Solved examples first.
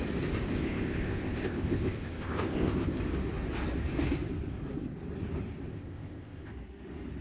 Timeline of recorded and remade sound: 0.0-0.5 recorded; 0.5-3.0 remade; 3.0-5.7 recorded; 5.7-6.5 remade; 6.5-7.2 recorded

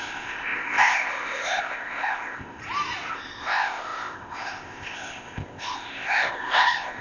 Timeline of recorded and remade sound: 0.0-2.6 remade; 2.6-3.1 recorded; 3.1-7.0 remade

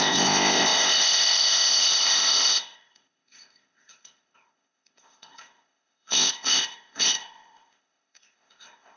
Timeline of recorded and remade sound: 0.0-9.0 remade

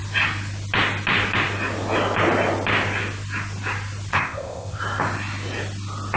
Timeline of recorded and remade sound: 0.0-4.1 recorded; 4.1-4.8 remade; 4.8-6.2 recorded

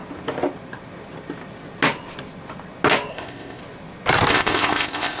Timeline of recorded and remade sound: 0.0-3.1 recorded; 3.1-3.6 remade; 3.6-4.3 recorded; 4.3-5.2 remade

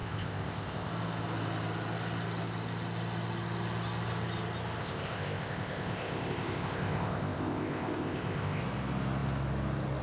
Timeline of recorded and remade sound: 0.0-0.9 remade; 0.9-4.8 recorded; 4.8-8.6 remade; 8.6-10.0 recorded

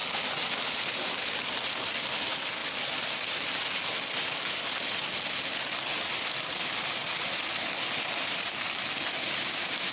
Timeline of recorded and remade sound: 0.0-9.9 recorded

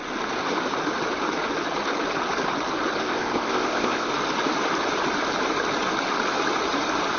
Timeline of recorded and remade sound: 0.0-3.0 recorded; 3.0-4.1 remade; 4.1-7.2 recorded